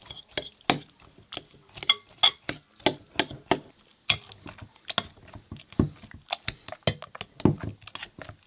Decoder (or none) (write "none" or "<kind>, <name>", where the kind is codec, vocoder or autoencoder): none